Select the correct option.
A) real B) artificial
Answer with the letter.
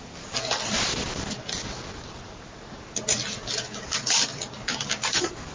A